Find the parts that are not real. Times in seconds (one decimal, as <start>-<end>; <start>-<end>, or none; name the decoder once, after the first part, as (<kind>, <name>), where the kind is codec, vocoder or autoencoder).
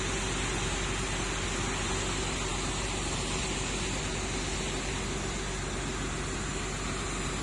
none